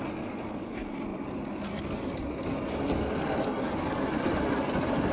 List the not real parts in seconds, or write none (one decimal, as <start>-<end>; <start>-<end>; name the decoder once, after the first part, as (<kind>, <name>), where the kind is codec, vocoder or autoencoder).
none